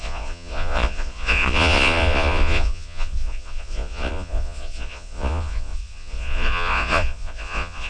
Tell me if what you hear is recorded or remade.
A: remade